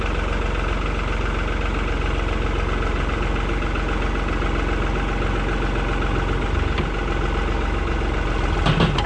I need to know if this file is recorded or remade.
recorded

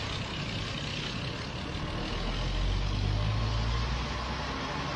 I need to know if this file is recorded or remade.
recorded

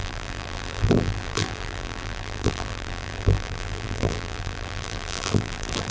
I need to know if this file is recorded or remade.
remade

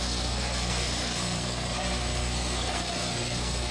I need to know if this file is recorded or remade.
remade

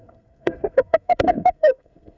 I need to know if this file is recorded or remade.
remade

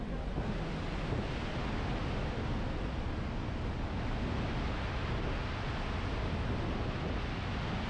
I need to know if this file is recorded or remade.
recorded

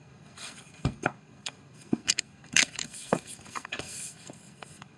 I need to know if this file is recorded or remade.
remade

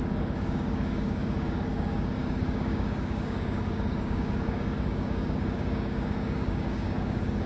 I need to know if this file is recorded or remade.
remade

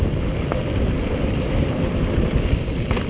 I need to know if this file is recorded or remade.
recorded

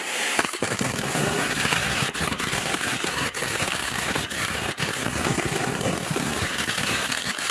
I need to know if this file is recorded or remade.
remade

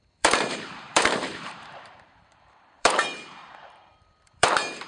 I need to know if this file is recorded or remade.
remade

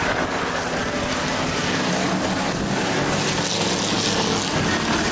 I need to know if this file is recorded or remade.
recorded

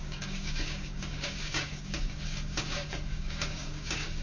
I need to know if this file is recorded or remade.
remade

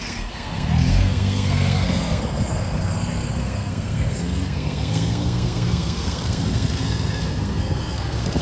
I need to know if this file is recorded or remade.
remade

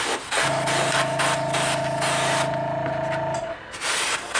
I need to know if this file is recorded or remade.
recorded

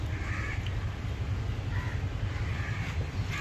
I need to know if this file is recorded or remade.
recorded